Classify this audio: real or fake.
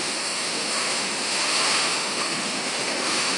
fake